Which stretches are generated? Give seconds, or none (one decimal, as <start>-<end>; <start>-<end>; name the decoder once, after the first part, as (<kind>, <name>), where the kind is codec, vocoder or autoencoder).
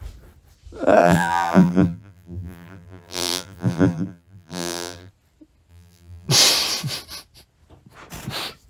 1.0-5.1 (vocoder, BigVGAN v2); 5.7-6.3